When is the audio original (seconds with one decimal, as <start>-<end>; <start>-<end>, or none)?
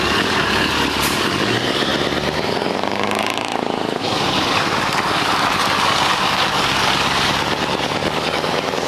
1.9-2.5